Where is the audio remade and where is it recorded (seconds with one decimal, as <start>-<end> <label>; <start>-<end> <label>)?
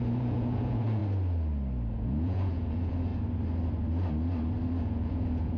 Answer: 0.0-1.0 remade; 1.0-1.9 recorded; 1.9-3.1 remade; 3.1-4.8 recorded; 4.8-5.6 remade